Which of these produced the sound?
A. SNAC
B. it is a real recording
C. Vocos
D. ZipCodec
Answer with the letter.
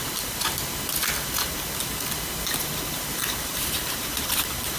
B